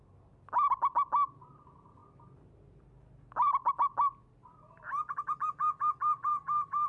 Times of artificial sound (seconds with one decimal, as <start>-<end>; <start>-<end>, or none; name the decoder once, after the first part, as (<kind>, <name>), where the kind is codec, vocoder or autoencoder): none